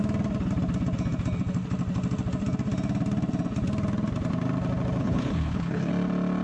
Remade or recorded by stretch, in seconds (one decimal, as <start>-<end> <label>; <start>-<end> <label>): 0.0-5.0 recorded; 5.0-5.9 remade; 5.9-6.4 recorded